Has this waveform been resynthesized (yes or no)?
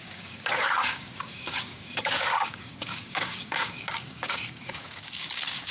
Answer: yes